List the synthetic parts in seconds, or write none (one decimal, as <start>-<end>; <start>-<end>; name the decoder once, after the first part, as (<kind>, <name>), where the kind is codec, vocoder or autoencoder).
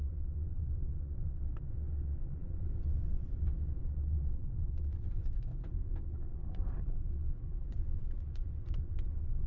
0.0-5.5 (vocoder, WaveNeXt); 6.0-9.5